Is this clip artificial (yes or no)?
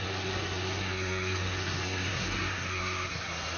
yes